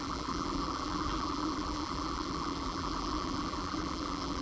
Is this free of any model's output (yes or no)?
no